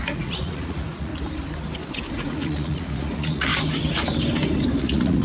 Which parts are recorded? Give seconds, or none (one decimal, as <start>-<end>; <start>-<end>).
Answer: 1.1-2.1; 3.5-4.8